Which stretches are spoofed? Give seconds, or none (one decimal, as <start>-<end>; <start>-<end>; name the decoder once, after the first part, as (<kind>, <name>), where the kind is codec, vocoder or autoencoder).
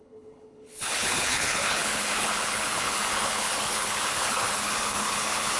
0.0-5.6 (codec, HILCodec)